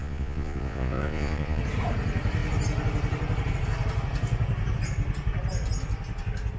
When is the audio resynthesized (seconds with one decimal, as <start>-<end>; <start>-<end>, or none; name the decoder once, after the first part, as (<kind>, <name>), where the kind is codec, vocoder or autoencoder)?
0.0-1.6 (vocoder, Vocos)